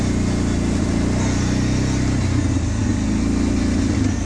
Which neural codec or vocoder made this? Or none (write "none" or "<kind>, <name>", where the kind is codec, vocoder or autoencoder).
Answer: none